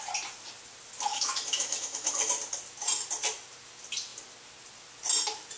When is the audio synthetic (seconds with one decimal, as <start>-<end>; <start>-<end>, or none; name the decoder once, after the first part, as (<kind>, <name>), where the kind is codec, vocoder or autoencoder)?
1.1-2.3 (autoencoder, DAC-VAE)